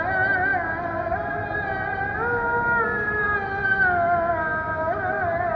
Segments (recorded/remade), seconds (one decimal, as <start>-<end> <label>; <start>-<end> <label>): 0.0-5.6 recorded